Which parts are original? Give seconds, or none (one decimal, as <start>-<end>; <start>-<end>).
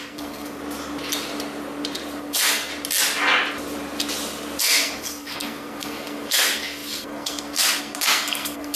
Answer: 0.6-2.2; 2.7-4.6